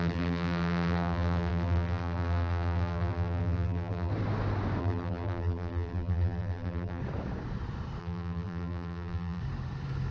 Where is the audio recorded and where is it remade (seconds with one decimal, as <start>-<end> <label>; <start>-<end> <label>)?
0.0-4.1 remade; 4.1-4.8 recorded; 4.8-7.0 remade; 7.0-8.0 recorded; 8.0-9.4 remade; 9.4-10.1 recorded